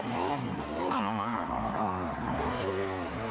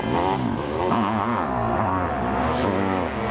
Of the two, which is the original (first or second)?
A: second